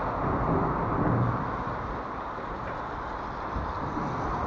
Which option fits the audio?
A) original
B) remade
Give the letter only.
A